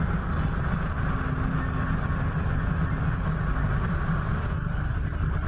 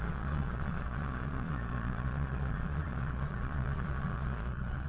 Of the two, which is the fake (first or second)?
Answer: second